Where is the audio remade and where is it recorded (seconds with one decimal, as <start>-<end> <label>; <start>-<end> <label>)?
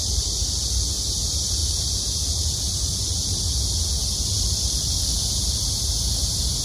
0.0-4.0 recorded; 4.0-5.6 remade; 5.6-6.6 recorded